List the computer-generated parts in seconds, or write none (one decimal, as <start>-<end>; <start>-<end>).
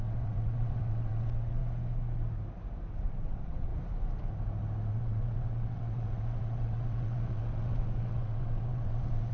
0.0-1.6; 2.9-3.7; 4.9-9.3